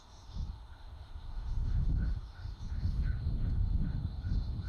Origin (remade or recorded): remade